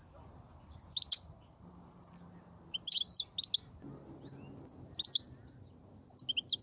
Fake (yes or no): no